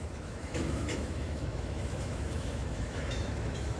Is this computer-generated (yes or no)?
yes